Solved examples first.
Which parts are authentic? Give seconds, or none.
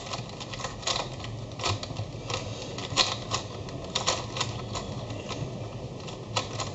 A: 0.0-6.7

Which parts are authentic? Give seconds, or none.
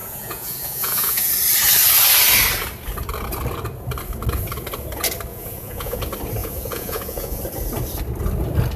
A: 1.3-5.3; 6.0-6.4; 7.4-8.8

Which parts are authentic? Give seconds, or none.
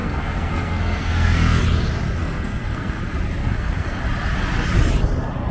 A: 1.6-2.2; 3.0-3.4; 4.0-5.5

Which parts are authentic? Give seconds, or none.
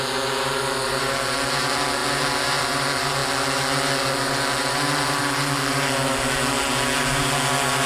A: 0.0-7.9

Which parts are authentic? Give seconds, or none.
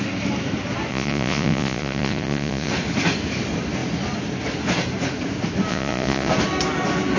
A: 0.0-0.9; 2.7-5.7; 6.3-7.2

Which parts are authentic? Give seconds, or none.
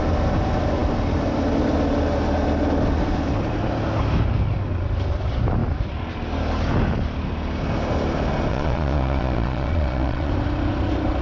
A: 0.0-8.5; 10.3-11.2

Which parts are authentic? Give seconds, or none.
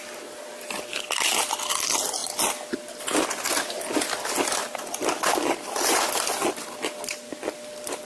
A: 0.0-8.0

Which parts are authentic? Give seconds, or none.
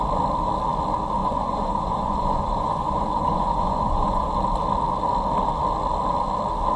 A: 0.0-1.2; 4.3-6.8